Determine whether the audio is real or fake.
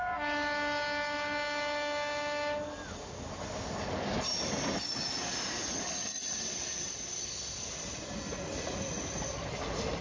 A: real